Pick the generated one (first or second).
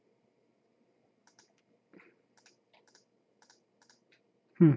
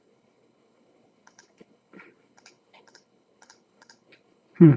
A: second